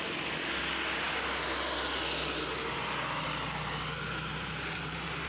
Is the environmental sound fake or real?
real